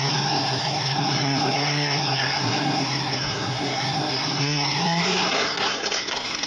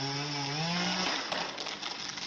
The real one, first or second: second